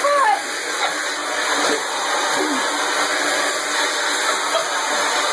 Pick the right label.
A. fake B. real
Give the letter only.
B